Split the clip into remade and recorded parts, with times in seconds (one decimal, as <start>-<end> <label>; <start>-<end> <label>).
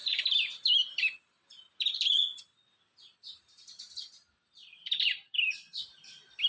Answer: 0.0-2.6 remade; 2.6-3.6 recorded; 3.6-6.5 remade